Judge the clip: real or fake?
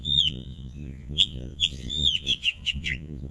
fake